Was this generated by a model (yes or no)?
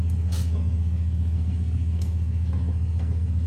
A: yes